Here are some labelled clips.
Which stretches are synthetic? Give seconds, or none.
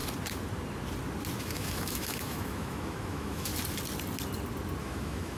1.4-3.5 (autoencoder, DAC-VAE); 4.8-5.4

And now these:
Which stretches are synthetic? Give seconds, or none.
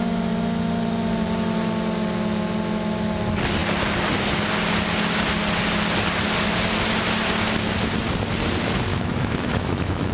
8.9-10.1 (autoencoder, DAC-VAE)